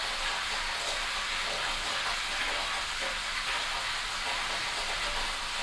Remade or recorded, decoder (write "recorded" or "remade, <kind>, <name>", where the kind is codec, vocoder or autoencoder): recorded